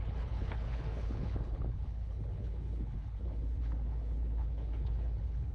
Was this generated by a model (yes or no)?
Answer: yes